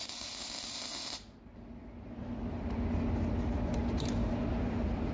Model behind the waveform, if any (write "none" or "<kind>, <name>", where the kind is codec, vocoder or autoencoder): none